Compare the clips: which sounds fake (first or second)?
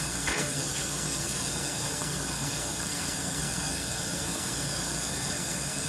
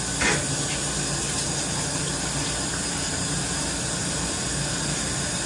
first